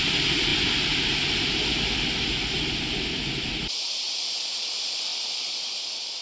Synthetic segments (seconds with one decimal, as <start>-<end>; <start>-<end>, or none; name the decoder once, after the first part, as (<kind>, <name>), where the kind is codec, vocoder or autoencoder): 5.1-5.8 (vocoder, BigVGAN v2)